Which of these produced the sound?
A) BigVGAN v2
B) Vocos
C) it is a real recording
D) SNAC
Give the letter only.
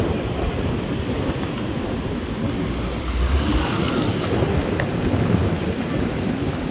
C